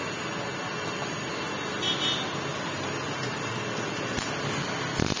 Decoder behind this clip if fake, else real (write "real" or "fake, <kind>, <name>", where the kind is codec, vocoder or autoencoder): real